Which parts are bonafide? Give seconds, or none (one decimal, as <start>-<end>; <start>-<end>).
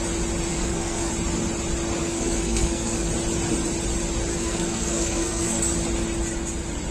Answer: 0.0-0.5; 1.1-2.0; 3.1-4.3; 5.6-6.9